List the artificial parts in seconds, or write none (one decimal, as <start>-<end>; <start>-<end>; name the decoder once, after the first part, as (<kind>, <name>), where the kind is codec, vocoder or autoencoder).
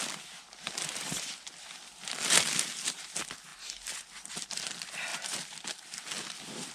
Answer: none